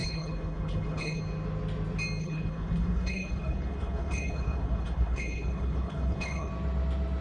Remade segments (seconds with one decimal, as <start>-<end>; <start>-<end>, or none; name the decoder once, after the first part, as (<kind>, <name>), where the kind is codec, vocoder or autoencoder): 0.0-1.2 (codec, HILCodec); 2.2-6.5

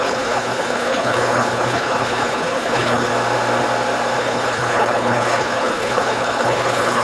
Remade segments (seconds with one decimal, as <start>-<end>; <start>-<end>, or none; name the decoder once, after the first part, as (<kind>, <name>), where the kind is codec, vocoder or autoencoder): 0.0-3.1 (codec, HILCodec); 4.2-7.0

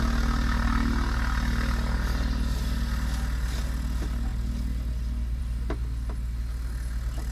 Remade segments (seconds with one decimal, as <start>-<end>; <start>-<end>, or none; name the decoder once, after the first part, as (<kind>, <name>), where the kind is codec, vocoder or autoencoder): none

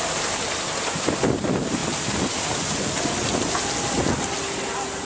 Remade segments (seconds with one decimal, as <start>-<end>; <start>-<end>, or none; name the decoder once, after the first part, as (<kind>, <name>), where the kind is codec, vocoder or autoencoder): none

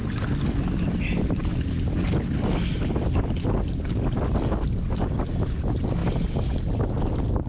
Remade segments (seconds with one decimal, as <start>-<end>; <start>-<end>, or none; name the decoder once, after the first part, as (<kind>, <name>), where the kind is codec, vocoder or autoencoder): none

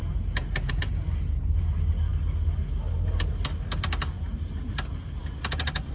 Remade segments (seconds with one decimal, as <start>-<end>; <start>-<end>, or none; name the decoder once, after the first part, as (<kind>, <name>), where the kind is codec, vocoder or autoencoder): none

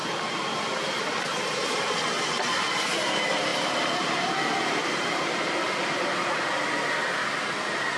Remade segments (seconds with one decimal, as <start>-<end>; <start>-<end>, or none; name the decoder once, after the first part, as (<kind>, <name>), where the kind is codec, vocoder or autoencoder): 0.0-1.0 (vocoder, BigVGAN v2)

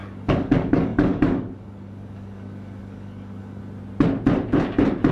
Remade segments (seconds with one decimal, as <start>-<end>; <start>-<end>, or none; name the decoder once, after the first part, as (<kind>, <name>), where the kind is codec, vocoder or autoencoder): 0.0-3.6 (codec, DAC)